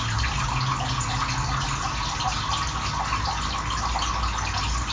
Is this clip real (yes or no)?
yes